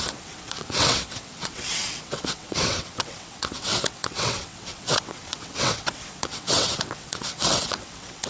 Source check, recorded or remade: remade